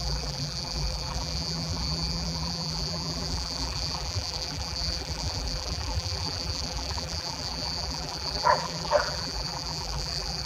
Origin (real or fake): fake